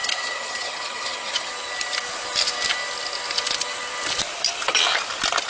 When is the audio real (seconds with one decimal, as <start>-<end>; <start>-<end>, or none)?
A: 1.5-5.5